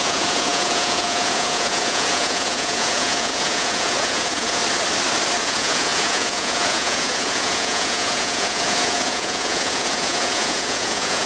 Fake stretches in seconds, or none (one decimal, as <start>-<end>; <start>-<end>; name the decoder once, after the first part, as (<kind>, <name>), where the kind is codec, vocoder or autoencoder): 0.0-4.6 (vocoder, Vocos); 5.4-11.3